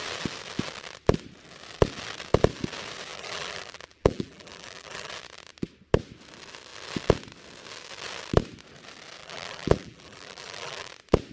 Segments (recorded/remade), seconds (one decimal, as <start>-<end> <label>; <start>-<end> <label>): 0.0-3.1 recorded; 3.1-5.1 remade; 5.1-9.2 recorded; 9.2-10.9 remade; 10.9-11.3 recorded

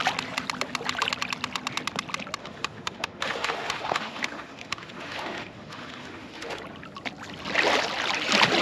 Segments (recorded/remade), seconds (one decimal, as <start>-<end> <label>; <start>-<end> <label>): 0.0-2.4 recorded; 2.4-6.6 remade; 6.6-8.6 recorded

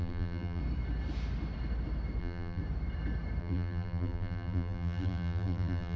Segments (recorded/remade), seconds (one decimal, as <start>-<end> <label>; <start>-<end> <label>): 0.0-0.6 remade; 0.6-2.2 recorded; 2.2-2.6 remade; 2.6-3.4 recorded; 3.4-6.0 remade

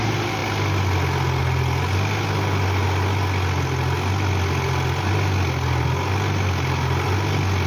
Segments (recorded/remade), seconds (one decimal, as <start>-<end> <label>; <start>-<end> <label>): 0.0-7.7 recorded

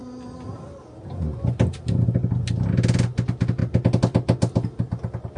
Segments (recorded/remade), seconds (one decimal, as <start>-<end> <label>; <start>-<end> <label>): 0.0-5.4 recorded